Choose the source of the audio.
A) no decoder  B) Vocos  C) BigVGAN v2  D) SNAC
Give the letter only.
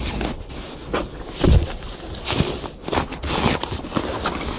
A